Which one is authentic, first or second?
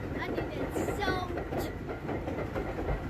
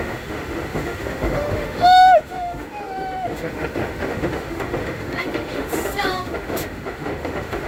first